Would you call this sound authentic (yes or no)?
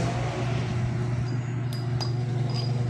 yes